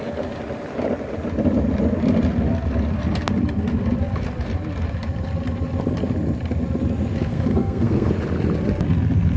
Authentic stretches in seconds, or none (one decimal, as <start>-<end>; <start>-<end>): 0.0-7.3; 8.1-9.4